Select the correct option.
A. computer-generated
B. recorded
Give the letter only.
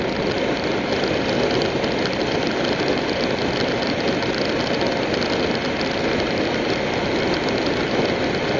B